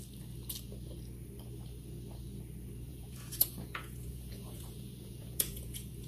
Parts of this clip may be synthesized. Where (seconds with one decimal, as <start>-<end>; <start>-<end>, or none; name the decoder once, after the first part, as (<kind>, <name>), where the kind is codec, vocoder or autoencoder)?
2.9-6.1 (vocoder, Vocos)